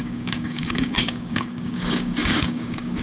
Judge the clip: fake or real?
fake